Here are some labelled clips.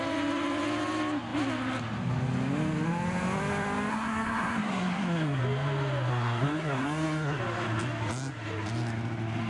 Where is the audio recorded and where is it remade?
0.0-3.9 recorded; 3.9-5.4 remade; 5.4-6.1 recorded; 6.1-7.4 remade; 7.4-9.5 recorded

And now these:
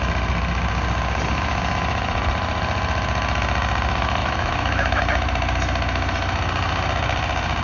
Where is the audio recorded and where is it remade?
0.0-4.2 recorded; 4.2-5.0 remade; 5.0-7.6 recorded

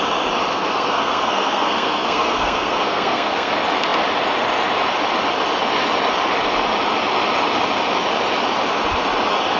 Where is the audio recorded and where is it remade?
0.0-0.5 recorded; 0.5-3.5 remade; 3.5-9.6 recorded